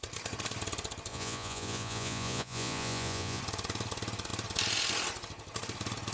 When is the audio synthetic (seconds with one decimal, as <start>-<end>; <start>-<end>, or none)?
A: 1.1-3.4